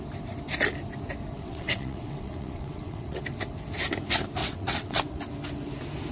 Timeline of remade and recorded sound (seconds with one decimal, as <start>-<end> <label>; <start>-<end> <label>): 0.0-1.4 recorded; 1.4-3.2 remade; 3.2-4.4 recorded; 4.4-5.2 remade; 5.2-6.1 recorded